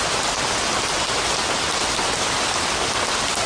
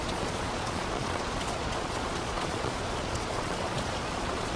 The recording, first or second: first